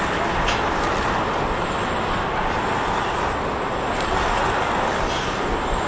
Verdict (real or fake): real